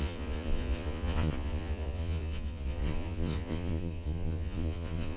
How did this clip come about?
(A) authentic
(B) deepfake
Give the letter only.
B